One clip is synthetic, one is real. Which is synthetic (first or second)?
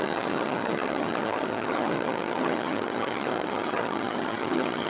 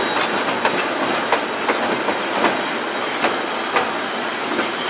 first